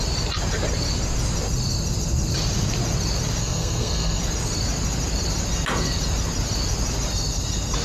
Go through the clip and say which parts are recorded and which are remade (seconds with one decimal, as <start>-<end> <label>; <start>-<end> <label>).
0.0-3.4 recorded; 3.4-4.2 remade; 4.2-7.8 recorded